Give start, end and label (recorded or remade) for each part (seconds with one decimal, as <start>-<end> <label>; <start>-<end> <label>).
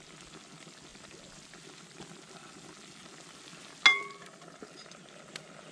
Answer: 0.0-5.7 recorded